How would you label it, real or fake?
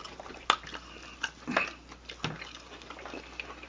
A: real